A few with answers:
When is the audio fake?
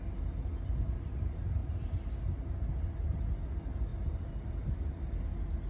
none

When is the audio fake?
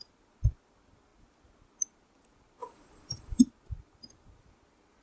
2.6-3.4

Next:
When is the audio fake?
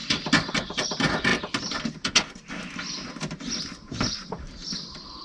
0.0-0.5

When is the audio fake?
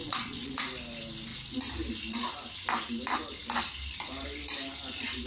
0.0-0.6